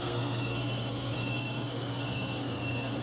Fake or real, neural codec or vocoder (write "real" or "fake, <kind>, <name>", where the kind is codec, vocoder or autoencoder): fake, codec, SNAC